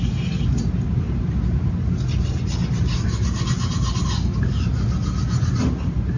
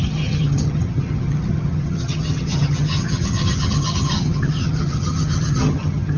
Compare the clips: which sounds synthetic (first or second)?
second